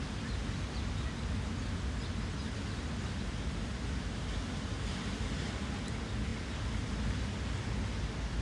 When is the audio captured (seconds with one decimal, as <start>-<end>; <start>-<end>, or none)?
0.0-8.4